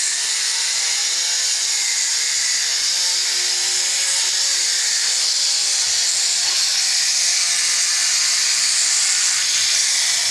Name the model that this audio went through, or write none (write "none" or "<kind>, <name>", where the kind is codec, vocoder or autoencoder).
none